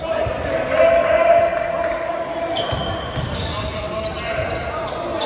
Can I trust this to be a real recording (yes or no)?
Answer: yes